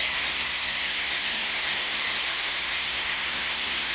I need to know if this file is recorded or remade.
remade